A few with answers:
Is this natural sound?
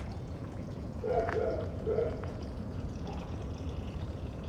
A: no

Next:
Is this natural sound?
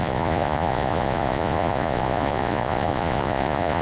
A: no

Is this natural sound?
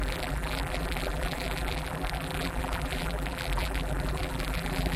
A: no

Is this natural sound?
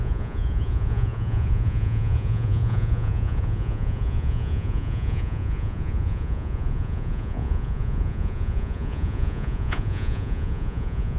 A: no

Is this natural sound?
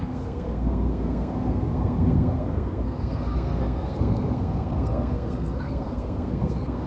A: no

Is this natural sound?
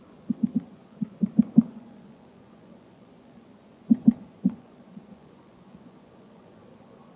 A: no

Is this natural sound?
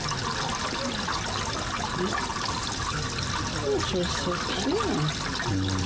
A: yes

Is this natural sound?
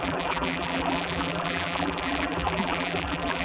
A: no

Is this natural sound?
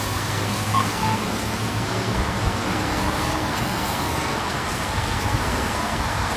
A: no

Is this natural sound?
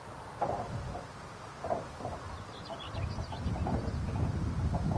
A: yes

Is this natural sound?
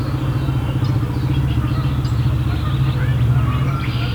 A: yes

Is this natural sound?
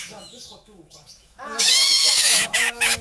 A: no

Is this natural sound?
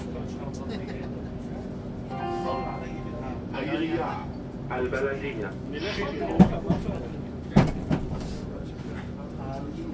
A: yes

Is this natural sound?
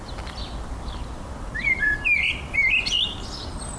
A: yes